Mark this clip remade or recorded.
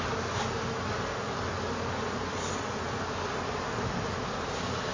recorded